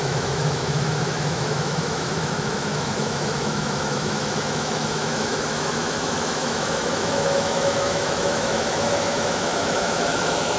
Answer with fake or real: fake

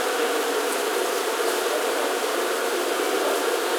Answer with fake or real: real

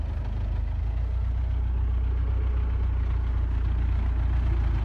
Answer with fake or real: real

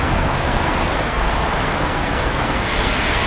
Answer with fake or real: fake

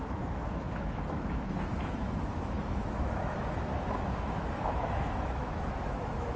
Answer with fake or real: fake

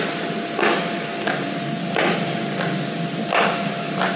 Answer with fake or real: real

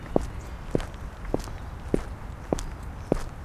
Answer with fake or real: real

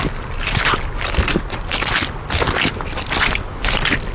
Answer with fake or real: real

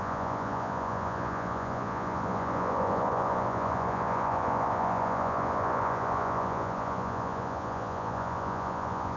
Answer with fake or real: fake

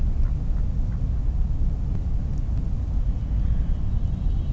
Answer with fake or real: real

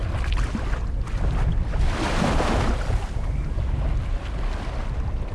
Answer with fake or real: real